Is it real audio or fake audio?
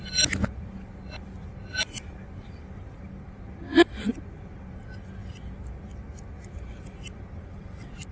real